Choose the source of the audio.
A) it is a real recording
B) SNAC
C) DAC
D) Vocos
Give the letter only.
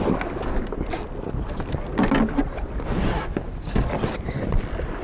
A